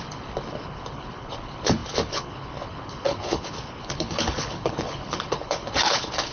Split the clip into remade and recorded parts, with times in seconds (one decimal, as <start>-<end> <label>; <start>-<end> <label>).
0.0-6.3 remade